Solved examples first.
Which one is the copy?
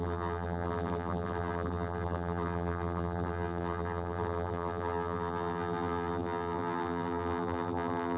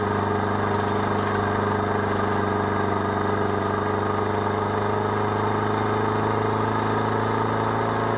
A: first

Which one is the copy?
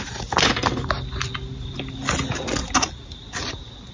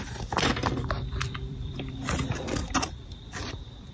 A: second